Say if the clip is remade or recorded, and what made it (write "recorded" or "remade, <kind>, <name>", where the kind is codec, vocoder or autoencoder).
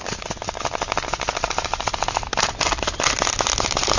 recorded